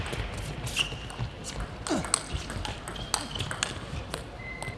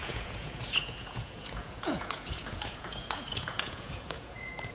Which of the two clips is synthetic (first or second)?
second